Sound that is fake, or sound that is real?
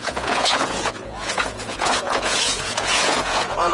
fake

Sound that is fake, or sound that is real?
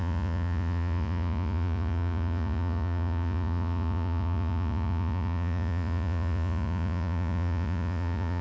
fake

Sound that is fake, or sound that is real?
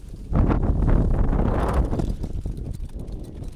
real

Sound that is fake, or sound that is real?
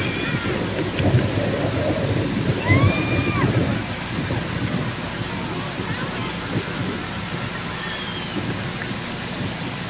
real